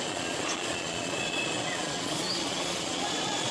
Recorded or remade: remade